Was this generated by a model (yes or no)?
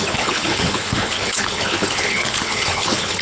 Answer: yes